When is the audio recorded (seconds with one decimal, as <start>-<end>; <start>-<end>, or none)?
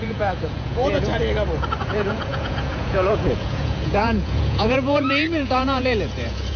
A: 1.2-1.8